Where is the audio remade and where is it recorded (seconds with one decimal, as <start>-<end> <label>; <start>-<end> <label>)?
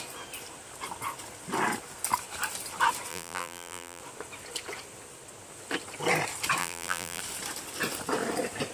0.0-3.1 recorded; 3.1-4.0 remade; 4.0-6.6 recorded; 6.6-7.2 remade; 7.2-8.7 recorded